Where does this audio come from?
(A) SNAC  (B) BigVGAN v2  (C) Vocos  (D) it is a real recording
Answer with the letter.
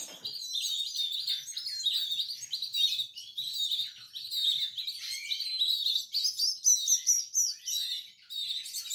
D